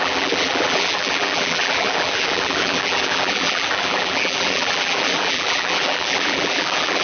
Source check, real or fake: fake